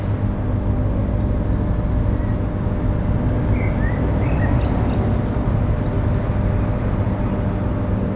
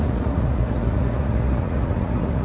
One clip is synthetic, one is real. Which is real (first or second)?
first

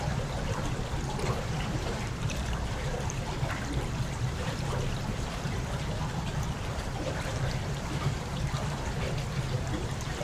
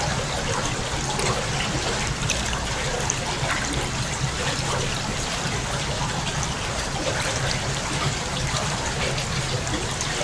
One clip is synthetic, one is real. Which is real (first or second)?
second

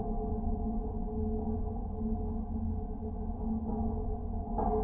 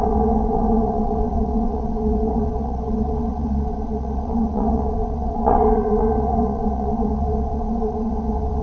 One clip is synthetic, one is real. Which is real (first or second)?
first